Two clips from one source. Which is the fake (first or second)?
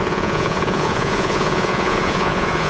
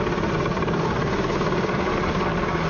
first